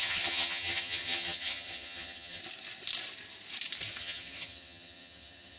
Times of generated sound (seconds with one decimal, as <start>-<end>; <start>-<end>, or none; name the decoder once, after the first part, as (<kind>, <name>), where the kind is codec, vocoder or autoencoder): 0.0-2.4 (vocoder, HiFi-GAN); 4.0-5.6